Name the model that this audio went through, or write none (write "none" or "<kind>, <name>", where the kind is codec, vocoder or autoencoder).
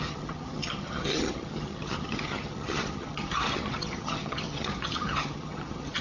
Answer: vocoder, HiFi-GAN